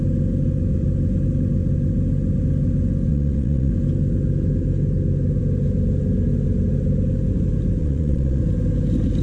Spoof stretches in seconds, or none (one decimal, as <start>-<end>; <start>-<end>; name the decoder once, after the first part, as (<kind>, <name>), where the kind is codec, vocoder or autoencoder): 3.1-3.7 (vocoder, Vocos); 7.8-8.4